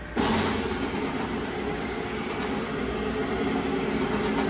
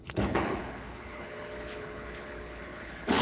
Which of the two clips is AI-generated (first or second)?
second